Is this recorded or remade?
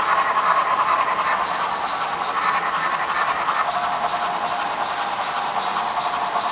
recorded